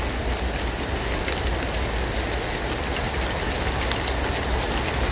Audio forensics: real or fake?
real